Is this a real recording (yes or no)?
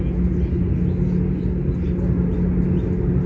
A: yes